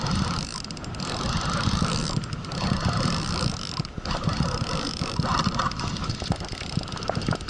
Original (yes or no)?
yes